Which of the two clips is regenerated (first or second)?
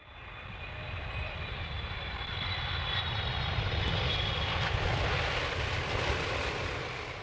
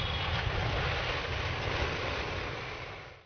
first